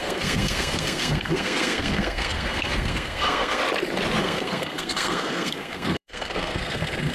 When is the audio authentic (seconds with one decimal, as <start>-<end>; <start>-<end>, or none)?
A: 3.6-4.2